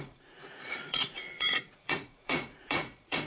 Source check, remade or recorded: remade